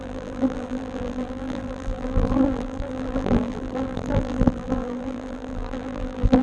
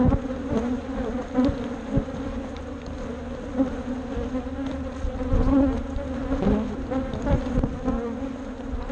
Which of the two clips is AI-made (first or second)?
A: first